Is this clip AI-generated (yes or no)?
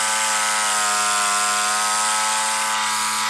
no